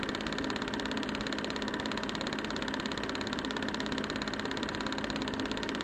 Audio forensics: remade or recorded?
recorded